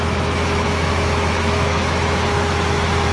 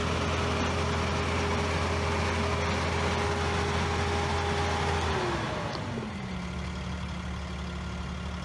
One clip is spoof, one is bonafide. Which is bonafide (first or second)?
second